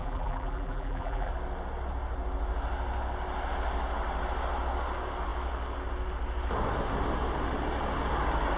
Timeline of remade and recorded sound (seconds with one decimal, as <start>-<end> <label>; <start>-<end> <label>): 0.0-1.3 remade; 1.3-8.6 recorded